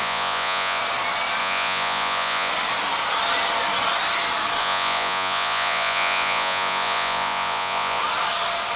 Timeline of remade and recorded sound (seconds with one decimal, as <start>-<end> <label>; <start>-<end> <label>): 0.0-0.8 remade; 0.8-1.4 recorded; 1.4-2.5 remade; 2.5-4.6 recorded; 4.6-8.0 remade; 8.0-8.8 recorded